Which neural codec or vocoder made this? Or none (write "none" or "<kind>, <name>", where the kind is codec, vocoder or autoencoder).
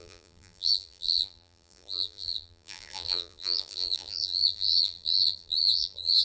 vocoder, BigVGAN v2